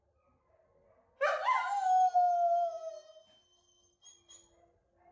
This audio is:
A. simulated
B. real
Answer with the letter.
B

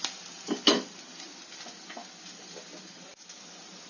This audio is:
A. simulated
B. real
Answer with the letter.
B